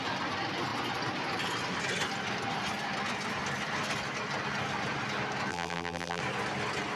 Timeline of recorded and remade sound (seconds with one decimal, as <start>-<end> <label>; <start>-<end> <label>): 0.0-5.5 recorded; 5.5-6.2 remade; 6.2-7.0 recorded